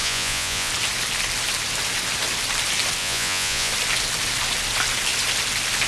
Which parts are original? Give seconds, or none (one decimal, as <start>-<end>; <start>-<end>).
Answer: 0.7-3.0; 3.7-5.9